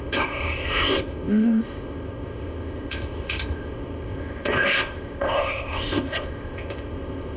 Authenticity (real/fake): fake